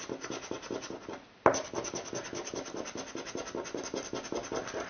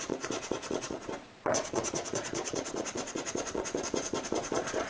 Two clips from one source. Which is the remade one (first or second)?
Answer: second